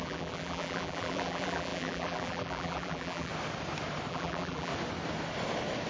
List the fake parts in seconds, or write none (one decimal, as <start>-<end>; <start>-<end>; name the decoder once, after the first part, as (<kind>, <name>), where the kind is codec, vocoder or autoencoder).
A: 0.0-3.3 (vocoder, BigVGAN v2); 4.1-4.7